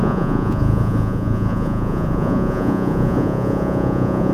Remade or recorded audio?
remade